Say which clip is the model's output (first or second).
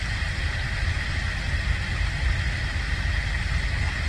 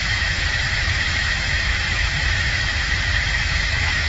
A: second